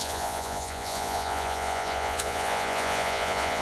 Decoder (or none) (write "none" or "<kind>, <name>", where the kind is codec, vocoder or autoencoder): vocoder, Vocos